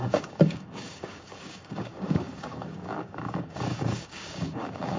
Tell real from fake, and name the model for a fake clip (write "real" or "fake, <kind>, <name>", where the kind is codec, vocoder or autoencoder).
fake, codec, DAC